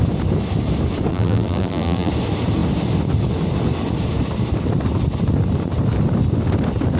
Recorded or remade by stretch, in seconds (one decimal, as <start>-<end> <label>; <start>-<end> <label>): 0.0-1.1 recorded; 1.1-2.1 remade; 2.1-7.0 recorded